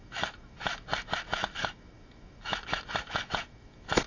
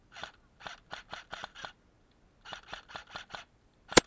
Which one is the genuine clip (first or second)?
second